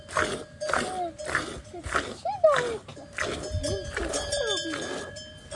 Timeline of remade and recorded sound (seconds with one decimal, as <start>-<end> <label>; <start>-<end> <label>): 0.0-5.6 recorded